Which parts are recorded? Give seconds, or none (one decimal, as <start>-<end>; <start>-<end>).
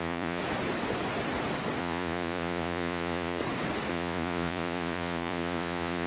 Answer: 0.4-1.8; 3.4-3.9